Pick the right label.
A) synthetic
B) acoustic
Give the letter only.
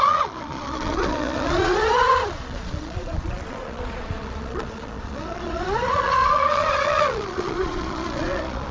A